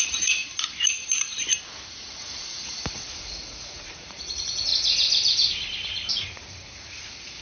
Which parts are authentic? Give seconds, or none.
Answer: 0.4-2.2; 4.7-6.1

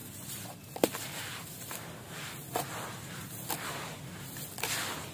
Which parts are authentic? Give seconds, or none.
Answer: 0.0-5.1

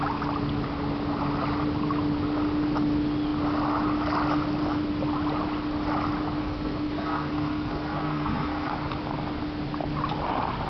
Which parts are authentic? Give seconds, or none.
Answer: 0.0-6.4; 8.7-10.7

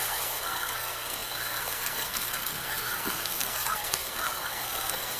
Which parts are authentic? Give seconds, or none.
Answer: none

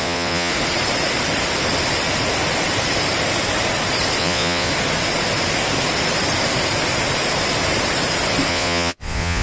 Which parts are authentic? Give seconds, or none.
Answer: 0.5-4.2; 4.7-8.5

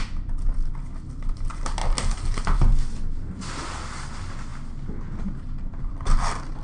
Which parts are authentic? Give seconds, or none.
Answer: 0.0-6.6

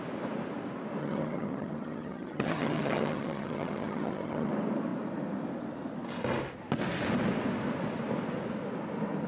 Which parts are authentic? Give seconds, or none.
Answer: 0.0-1.0; 4.5-9.3

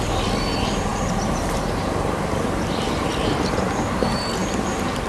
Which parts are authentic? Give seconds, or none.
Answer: 0.0-5.1